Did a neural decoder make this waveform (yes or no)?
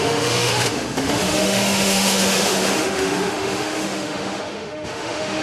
yes